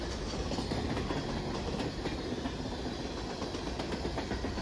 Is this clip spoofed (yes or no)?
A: no